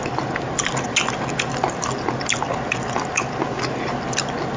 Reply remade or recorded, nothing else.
recorded